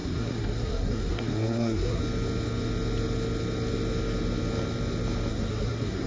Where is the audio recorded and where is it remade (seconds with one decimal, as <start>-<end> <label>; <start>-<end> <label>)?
0.0-2.0 remade; 2.0-5.3 recorded; 5.3-6.1 remade